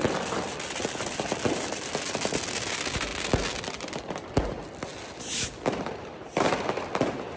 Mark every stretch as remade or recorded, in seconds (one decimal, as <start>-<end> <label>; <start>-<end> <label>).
0.0-7.4 recorded